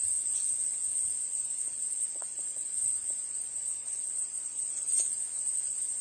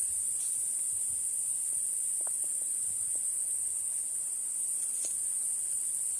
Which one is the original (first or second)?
second